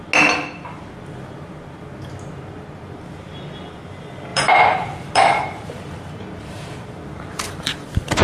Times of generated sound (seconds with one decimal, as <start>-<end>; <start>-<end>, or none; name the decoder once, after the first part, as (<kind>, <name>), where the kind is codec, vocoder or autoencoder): 4.3-8.2 (vocoder, BigVGAN v2)